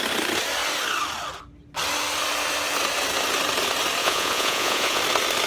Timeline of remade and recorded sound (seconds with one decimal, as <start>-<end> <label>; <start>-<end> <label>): 0.0-4.0 recorded; 4.0-5.0 remade; 5.0-5.5 recorded